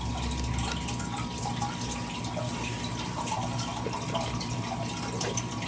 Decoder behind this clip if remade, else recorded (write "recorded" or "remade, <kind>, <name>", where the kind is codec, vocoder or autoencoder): recorded